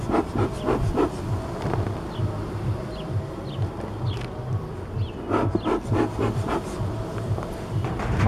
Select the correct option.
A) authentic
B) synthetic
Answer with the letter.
A